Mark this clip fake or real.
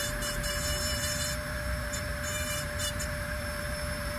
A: fake